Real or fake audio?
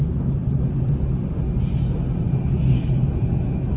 real